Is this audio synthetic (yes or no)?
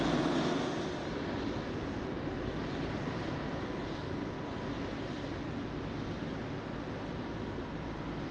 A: no